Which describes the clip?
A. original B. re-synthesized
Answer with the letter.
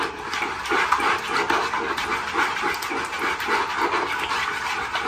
A